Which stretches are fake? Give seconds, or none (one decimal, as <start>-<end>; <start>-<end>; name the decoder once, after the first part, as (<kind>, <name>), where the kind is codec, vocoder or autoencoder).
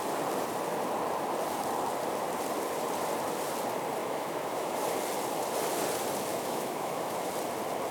4.0-4.7 (autoencoder, DAC-VAE); 6.3-7.3